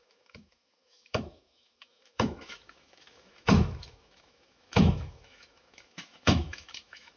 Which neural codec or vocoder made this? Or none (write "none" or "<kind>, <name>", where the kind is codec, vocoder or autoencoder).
autoencoder, DAC-VAE